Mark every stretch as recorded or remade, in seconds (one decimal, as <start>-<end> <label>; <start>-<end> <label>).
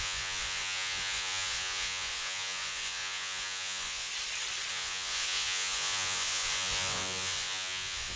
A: 0.0-4.1 remade; 4.1-4.7 recorded; 4.7-8.2 remade